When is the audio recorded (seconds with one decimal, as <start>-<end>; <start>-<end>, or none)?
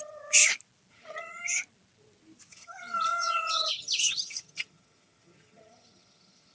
0.4-0.9; 1.4-2.5